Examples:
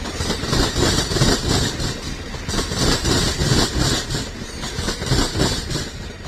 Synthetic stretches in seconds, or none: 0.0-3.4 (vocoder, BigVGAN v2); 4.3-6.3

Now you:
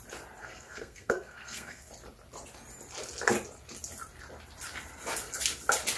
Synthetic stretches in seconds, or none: 0.4-1.9 (codec, SNAC)

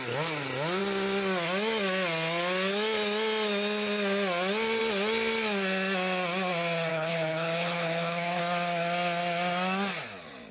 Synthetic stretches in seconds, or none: 6.9-8.4 (codec, HILCodec)

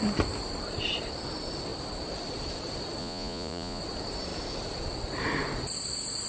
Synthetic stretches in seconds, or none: 3.0-3.8 (vocoder, Vocos)

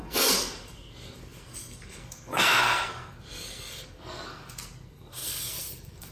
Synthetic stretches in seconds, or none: 0.0-6.1 (codec, SNAC)

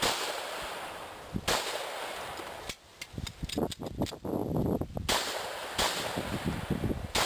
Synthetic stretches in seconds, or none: 2.9-3.4 (vocoder, BigVGAN v2)

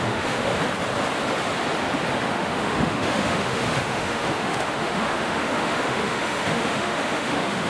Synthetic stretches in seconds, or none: 0.0-0.5 (autoencoder, DAC-VAE); 2.1-7.7

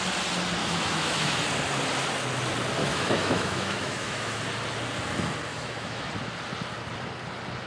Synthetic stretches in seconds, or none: 0.6-1.4 (autoencoder, DAC-VAE); 2.8-4.4; 5.5-6.1